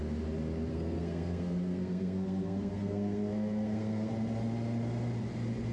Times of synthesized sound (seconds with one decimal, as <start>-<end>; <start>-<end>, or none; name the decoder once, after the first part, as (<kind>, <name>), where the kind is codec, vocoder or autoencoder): 0.7-4.1 (codec, SNAC)